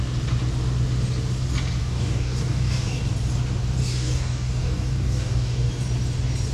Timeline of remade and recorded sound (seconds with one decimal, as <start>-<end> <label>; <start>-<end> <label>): 0.0-1.8 recorded; 1.8-3.0 remade; 3.0-3.8 recorded; 3.8-5.7 remade; 5.7-6.5 recorded